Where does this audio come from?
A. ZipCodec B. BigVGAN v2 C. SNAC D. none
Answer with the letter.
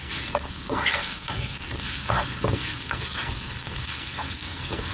C